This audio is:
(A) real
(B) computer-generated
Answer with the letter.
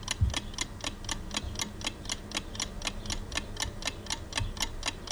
A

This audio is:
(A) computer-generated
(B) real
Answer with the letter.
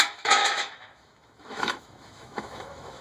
A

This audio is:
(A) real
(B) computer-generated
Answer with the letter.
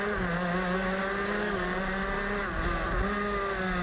A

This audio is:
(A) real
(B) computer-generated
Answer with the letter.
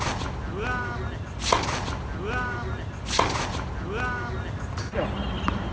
A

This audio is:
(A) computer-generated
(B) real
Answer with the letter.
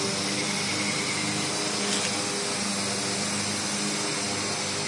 B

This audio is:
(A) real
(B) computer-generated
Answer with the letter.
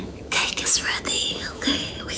B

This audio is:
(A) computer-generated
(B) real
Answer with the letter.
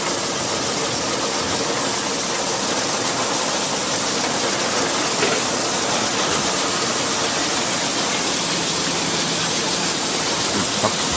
B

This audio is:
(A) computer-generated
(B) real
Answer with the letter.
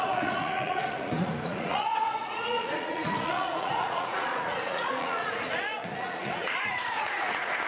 A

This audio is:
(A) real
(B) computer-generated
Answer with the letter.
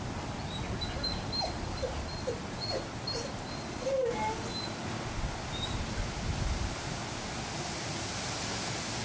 A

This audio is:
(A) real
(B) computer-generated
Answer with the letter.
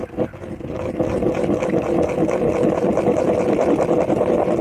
B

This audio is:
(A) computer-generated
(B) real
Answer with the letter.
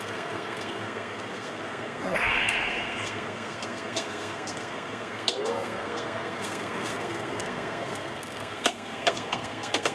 A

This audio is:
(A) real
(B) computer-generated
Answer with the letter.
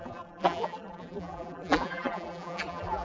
B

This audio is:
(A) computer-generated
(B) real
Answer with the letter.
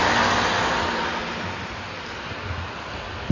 B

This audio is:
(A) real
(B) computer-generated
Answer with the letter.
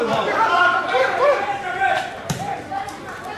B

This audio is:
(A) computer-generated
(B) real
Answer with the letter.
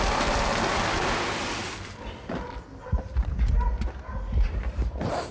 B